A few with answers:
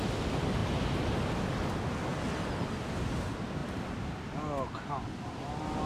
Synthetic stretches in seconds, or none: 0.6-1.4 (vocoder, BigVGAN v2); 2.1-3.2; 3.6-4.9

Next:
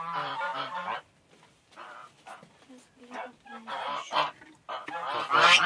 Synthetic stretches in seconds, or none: 0.0-0.5 (vocoder, BigVGAN v2); 1.2-2.0

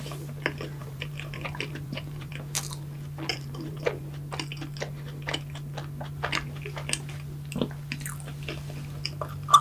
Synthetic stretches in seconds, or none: 0.8-2.3 (vocoder, BigVGAN v2); 3.3-4.0

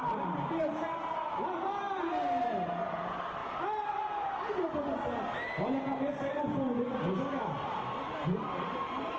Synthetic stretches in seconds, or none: 0.0-3.4 (vocoder, BigVGAN v2); 8.1-9.2

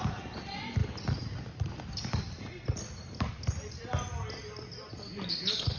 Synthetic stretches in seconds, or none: none

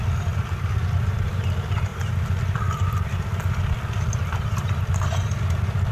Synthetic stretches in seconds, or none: 1.9-5.0 (vocoder, BigVGAN v2)

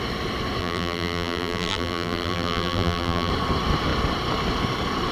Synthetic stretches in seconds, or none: 0.6-3.3 (vocoder, BigVGAN v2)